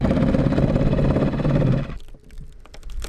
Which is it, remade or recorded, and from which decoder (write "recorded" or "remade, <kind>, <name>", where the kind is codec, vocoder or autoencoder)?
recorded